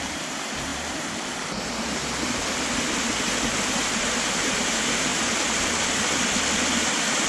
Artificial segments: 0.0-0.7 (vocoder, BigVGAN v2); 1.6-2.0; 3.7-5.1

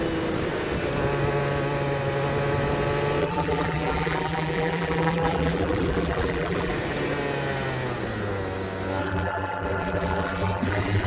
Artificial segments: 3.2-6.7 (vocoder, BigVGAN v2); 9.0-11.1

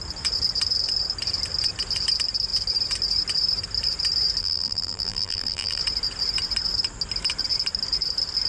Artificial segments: 4.4-5.8 (vocoder, BigVGAN v2)

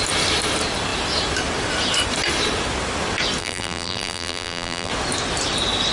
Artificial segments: 3.4-4.9 (vocoder, BigVGAN v2)

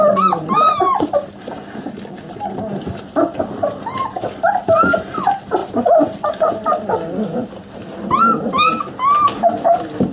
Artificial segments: none

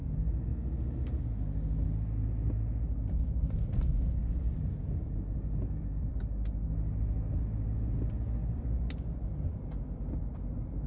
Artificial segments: 4.2-6.2 (vocoder, BigVGAN v2); 8.4-10.9